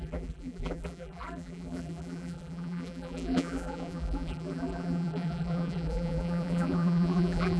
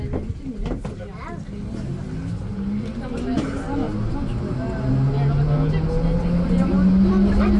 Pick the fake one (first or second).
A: first